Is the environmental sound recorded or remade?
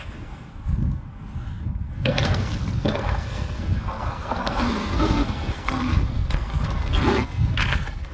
remade